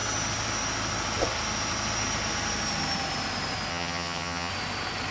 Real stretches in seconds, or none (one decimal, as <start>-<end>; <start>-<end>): 0.0-3.7; 4.5-5.1